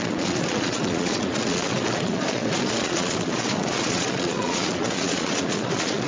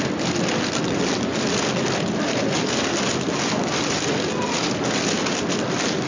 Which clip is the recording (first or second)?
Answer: second